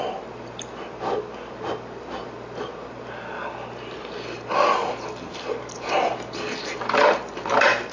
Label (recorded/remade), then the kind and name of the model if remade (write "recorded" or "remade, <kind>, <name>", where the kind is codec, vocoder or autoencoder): remade, vocoder, BigVGAN v2